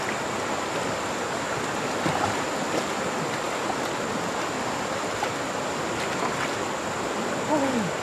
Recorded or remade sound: recorded